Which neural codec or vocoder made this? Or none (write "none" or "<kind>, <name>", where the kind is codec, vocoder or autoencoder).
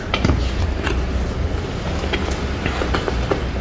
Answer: none